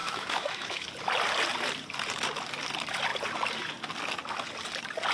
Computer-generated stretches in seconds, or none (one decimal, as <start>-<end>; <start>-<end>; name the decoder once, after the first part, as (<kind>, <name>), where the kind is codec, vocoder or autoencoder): 0.0-0.9 (autoencoder, DAC-VAE)